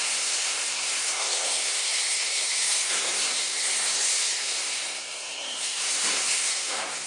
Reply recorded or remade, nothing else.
remade